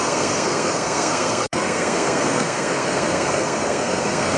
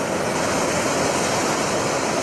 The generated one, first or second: first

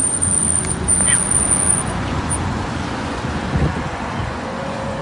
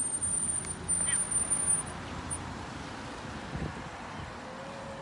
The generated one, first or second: first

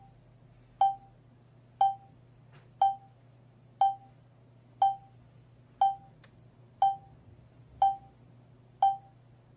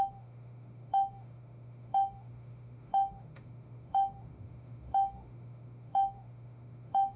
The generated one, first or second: second